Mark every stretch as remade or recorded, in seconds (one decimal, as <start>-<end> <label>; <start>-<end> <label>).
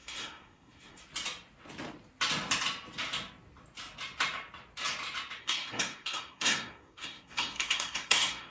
0.0-1.0 remade; 1.0-5.4 recorded; 5.4-8.5 remade